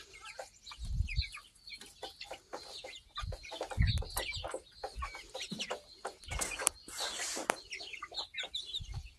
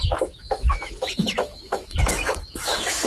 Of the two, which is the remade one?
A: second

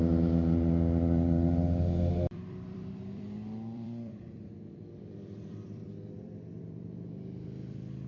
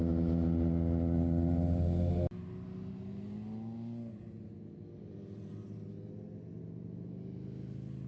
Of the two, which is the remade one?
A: first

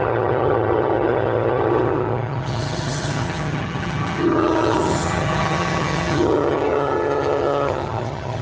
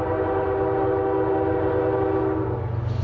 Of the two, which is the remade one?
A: first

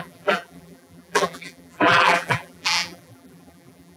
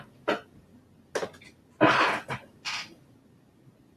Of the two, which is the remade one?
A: first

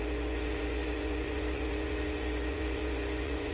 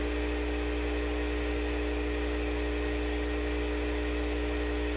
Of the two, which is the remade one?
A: first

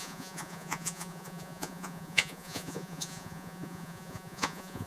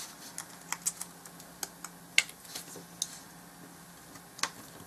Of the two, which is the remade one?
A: first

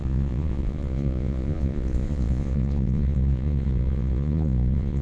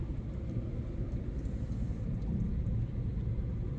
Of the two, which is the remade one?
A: first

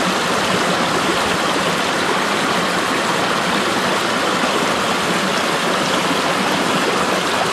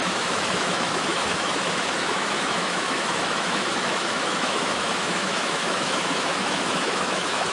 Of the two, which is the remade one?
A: second